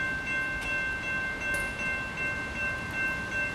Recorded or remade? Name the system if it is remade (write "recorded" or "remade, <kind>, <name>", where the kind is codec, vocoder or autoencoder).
recorded